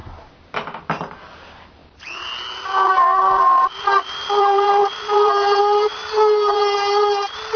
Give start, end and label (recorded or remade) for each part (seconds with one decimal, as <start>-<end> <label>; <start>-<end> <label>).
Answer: 0.0-1.1 recorded; 1.1-1.8 remade; 1.8-3.8 recorded; 3.8-7.6 remade